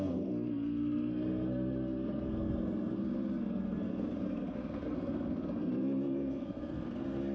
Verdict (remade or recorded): remade